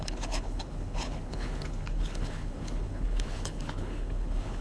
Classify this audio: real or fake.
fake